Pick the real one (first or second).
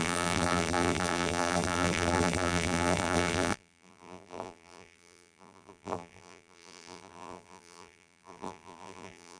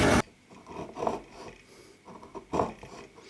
second